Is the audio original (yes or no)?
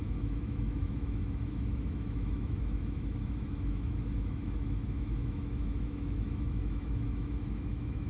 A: no